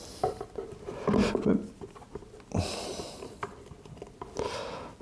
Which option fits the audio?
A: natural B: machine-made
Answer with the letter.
A